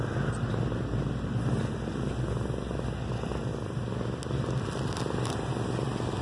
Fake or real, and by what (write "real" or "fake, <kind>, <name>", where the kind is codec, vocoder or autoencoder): real